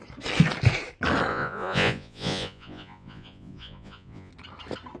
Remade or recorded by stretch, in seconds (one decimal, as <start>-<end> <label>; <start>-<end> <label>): 0.0-1.3 recorded; 1.3-4.3 remade; 4.3-5.0 recorded